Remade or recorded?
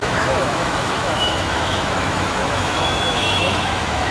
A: remade